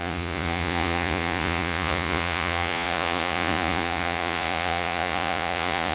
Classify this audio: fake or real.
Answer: fake